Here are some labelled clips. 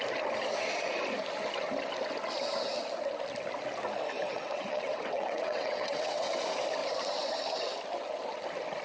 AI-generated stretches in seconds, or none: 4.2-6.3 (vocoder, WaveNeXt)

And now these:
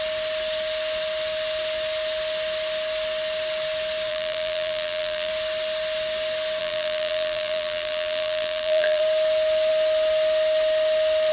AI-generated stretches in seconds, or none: 4.1-5.3 (vocoder, BigVGAN v2); 6.6-9.0

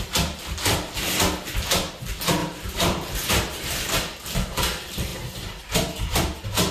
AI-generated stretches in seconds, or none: 2.4-3.9 (vocoder, BigVGAN v2)